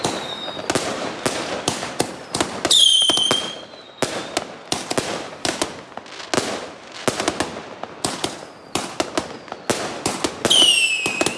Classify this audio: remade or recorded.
recorded